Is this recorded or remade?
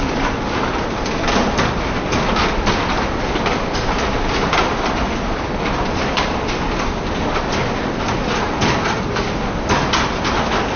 recorded